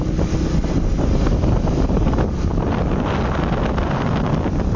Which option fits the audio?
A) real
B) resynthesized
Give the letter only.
A